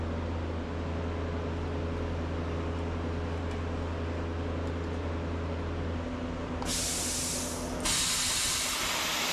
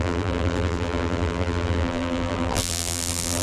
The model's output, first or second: second